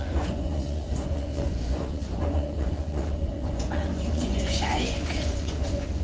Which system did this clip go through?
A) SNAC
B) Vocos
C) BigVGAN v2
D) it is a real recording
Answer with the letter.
B